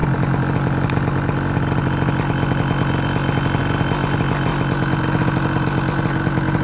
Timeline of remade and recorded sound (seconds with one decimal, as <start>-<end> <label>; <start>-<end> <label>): 0.0-6.6 recorded